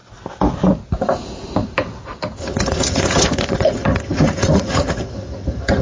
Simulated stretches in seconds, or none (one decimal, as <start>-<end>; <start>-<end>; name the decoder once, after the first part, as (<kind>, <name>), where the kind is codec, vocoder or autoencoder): 2.4-5.8 (vocoder, HiFi-GAN)